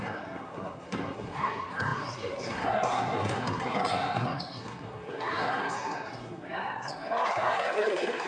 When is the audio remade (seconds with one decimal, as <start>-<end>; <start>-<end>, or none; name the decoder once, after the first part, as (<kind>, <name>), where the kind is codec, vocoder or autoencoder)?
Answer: 0.0-8.3 (codec, SNAC)

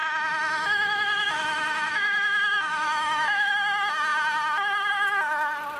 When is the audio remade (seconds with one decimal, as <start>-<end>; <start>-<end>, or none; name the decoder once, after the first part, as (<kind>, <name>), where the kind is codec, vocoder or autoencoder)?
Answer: 0.0-3.5 (autoencoder, DAC-VAE)

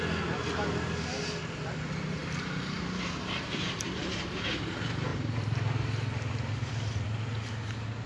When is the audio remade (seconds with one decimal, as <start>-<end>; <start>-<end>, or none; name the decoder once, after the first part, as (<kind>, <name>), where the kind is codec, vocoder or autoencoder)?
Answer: 2.2-4.5 (vocoder, BigVGAN v2)

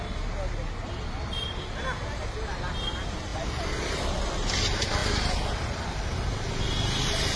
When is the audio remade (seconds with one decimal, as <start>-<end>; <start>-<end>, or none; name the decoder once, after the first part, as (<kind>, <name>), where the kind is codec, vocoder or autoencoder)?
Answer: 3.3-4.0 (vocoder, BigVGAN v2)

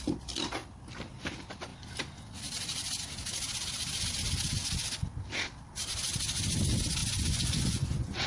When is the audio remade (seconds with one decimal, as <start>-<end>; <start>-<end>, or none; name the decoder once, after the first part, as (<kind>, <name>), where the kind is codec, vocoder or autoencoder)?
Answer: 7.0-8.3 (vocoder, Vocos)

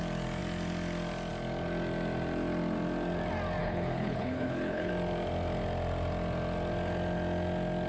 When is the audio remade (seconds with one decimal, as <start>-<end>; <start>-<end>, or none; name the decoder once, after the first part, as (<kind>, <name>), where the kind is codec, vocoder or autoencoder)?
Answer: 3.6-4.9 (codec, HILCodec)

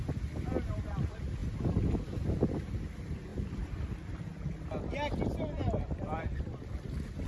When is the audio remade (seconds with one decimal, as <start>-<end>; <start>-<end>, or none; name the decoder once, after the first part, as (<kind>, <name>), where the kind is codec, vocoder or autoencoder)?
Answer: 3.3-4.3 (vocoder, BigVGAN v2); 5.6-6.4

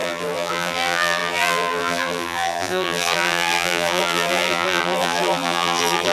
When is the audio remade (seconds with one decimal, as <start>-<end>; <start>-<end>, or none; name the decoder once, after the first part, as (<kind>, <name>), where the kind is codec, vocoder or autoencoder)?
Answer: 0.0-6.1 (vocoder, BigVGAN v2)